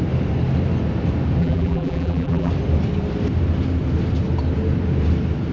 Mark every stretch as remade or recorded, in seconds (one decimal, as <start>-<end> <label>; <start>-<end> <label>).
0.0-1.4 recorded; 1.4-2.5 remade; 2.5-5.5 recorded